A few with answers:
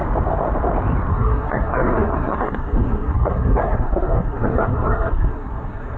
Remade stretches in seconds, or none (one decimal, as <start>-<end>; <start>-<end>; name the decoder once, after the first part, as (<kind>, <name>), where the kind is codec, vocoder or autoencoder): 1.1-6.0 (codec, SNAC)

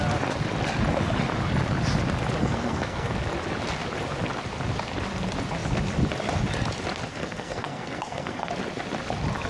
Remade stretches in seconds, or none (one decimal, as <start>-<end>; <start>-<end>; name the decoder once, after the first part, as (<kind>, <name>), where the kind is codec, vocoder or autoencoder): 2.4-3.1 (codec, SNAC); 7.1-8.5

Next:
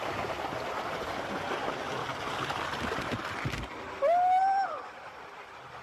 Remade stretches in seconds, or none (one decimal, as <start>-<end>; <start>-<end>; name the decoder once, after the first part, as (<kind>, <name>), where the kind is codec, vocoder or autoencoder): none

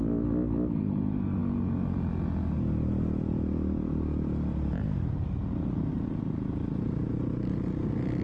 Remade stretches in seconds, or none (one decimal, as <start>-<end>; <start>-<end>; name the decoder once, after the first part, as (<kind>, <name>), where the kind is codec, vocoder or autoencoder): none

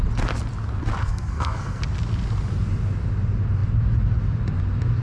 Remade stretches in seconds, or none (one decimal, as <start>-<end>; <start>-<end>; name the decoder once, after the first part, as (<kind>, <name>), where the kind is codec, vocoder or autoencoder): 1.0-1.8 (codec, SNAC)

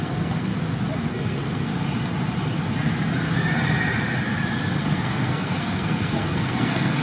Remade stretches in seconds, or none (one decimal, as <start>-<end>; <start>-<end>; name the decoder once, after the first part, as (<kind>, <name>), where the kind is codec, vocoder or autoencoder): 0.0-0.5 (codec, SNAC); 1.1-1.7; 4.8-7.0